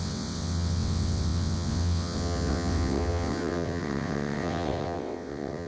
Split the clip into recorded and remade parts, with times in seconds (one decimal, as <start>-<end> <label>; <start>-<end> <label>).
0.0-5.7 remade

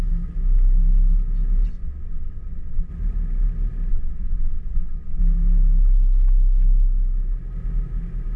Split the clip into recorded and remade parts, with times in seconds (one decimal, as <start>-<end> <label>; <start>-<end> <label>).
0.0-1.7 recorded; 1.7-2.9 remade; 2.9-3.9 recorded; 3.9-5.2 remade; 5.2-8.4 recorded

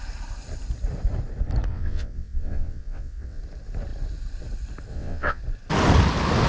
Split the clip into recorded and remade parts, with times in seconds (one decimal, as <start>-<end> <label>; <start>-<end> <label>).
0.0-1.7 recorded; 1.7-3.4 remade; 3.4-4.9 recorded; 4.9-5.4 remade; 5.4-6.5 recorded

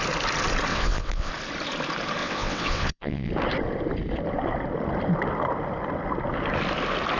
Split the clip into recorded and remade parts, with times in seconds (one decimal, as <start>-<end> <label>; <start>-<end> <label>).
0.0-0.7 recorded; 0.7-1.3 remade; 1.3-2.2 recorded; 2.2-3.3 remade; 3.3-7.2 recorded

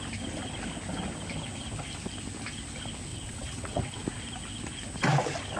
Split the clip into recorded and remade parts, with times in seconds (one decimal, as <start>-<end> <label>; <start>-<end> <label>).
0.0-3.1 recorded; 3.1-4.0 remade; 4.0-5.6 recorded

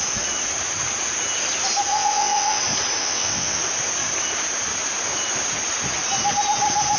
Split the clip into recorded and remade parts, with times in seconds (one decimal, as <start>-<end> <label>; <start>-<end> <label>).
0.0-1.9 recorded; 1.9-2.6 remade; 2.6-3.0 recorded; 3.0-3.6 remade; 3.6-7.0 recorded

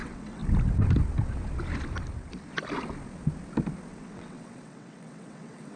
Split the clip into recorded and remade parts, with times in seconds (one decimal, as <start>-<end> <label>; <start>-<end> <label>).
0.0-0.4 remade; 0.4-3.9 recorded; 3.9-5.8 remade

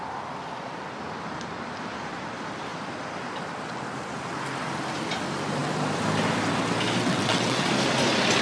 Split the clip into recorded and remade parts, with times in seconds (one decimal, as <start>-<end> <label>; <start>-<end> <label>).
0.0-7.0 recorded; 7.0-7.7 remade; 7.7-8.4 recorded